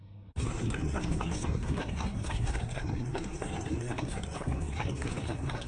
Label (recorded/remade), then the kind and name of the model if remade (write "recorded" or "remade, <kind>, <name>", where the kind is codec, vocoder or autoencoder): remade, codec, SNAC